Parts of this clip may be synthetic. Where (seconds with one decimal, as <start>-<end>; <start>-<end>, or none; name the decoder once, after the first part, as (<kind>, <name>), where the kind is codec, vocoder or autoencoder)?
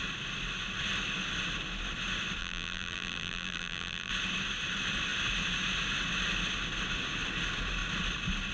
2.4-4.1 (vocoder, BigVGAN v2)